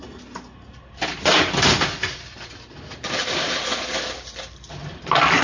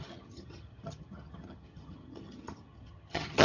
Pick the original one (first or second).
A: first